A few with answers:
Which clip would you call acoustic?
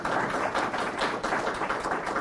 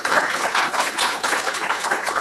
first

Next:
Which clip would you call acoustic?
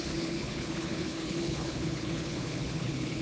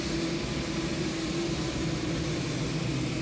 second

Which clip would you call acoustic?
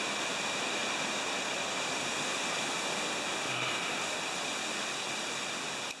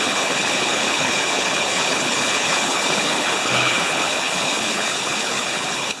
first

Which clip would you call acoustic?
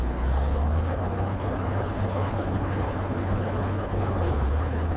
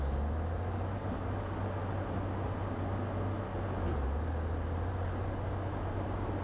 second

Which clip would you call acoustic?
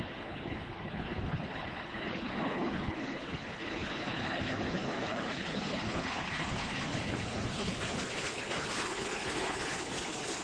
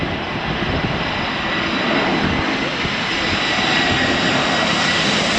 second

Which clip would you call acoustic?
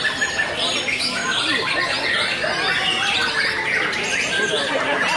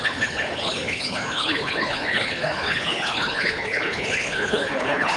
first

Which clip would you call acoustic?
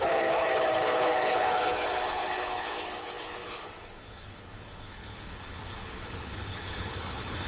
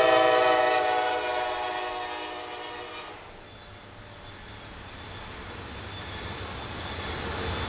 second